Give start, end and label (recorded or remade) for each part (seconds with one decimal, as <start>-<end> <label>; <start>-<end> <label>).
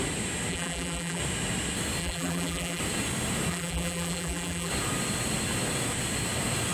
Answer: 0.0-0.5 recorded; 0.5-1.2 remade; 1.2-2.0 recorded; 2.0-2.8 remade; 2.8-3.5 recorded; 3.5-4.7 remade; 4.7-6.7 recorded